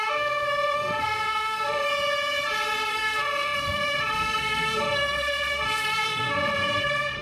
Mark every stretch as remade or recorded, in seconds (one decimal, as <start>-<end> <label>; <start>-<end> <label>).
0.0-1.9 remade; 1.9-2.9 recorded; 2.9-7.2 remade